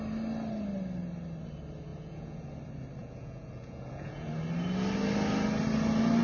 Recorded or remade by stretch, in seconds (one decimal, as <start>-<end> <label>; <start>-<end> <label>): 0.0-1.9 recorded; 1.9-2.5 remade; 2.5-3.0 recorded; 3.0-4.3 remade; 4.3-6.2 recorded